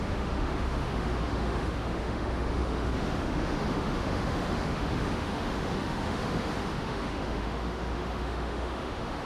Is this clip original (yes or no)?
no